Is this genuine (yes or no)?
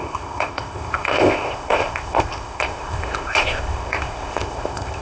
no